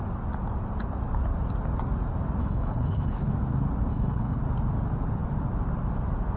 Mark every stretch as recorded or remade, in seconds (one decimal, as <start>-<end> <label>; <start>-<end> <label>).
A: 0.0-2.4 recorded; 2.4-3.3 remade; 3.3-3.9 recorded; 3.9-4.4 remade; 4.4-6.4 recorded